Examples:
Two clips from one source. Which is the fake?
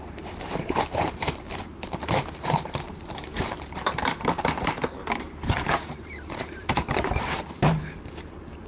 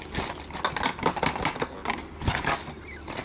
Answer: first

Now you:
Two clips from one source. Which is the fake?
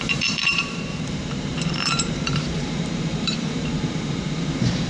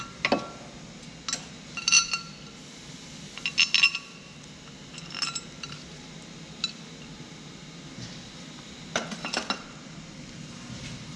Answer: first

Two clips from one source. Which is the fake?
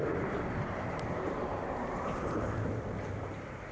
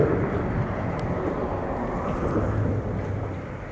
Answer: first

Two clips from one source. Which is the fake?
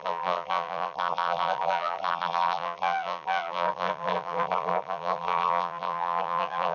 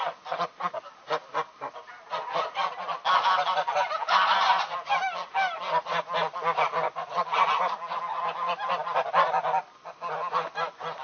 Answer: first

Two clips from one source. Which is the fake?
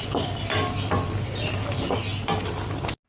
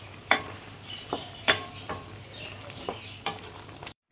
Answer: second